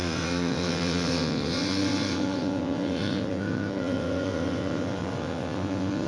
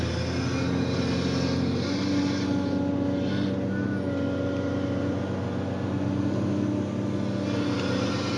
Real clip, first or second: second